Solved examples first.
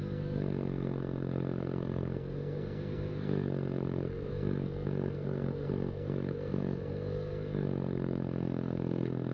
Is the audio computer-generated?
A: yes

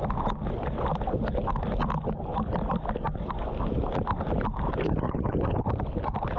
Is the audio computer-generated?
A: no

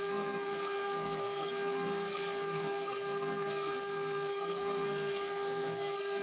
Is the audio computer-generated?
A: yes